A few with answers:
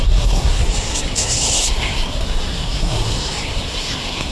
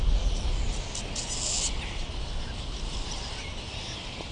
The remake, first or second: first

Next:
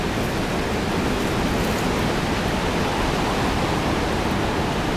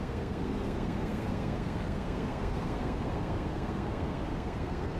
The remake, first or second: second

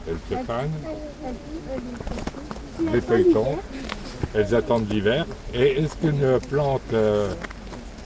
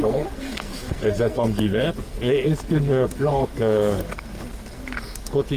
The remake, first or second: second